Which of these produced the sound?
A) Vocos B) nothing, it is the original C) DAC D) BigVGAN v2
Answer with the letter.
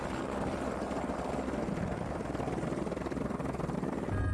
B